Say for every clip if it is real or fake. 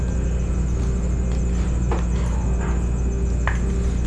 real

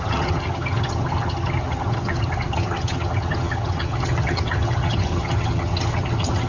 fake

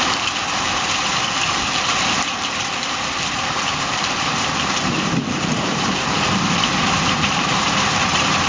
fake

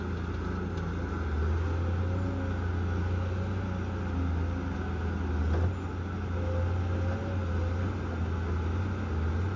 real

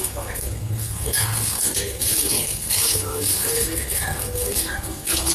fake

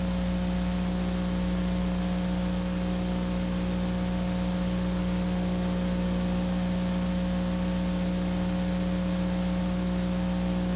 real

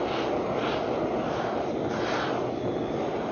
real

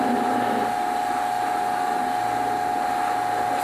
real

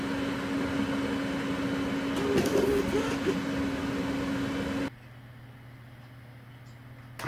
real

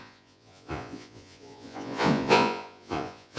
fake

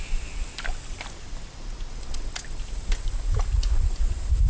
real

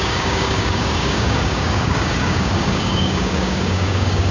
fake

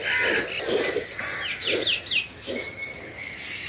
real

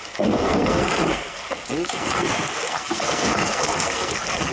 fake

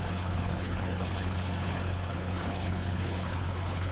fake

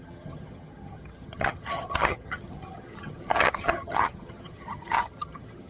fake